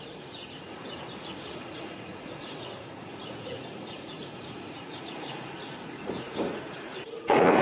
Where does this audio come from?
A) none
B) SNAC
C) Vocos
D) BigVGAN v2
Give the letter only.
C